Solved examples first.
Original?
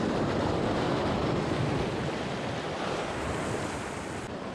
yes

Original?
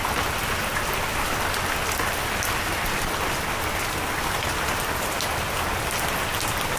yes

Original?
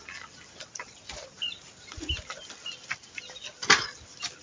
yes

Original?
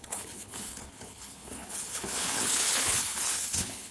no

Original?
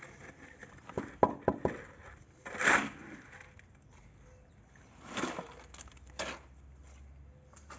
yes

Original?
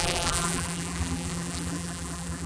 no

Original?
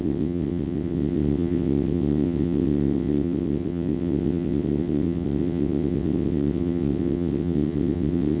no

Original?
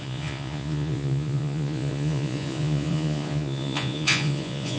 no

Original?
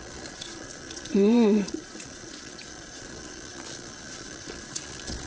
no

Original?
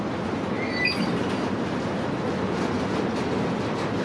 yes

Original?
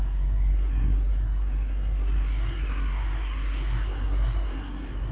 no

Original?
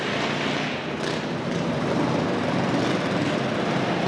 yes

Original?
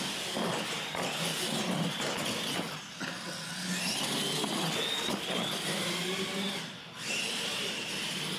yes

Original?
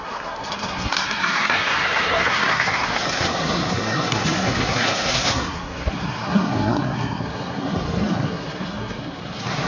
no